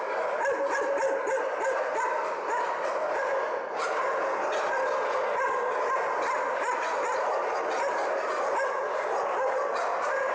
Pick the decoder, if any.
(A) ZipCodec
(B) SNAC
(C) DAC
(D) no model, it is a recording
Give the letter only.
D